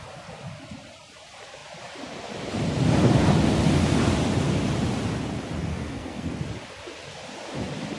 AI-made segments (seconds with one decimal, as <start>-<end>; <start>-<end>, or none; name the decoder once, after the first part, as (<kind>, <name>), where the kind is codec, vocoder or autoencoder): 5.7-6.3 (codec, SNAC)